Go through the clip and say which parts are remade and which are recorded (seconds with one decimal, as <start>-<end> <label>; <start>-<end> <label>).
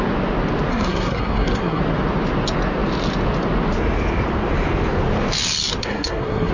0.0-0.7 recorded; 0.7-1.8 remade; 1.8-5.8 recorded; 5.8-6.5 remade